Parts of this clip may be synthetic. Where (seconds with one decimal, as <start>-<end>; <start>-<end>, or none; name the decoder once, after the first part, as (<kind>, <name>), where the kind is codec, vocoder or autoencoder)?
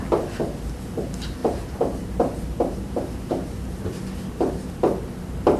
1.4-3.8 (vocoder, BigVGAN v2)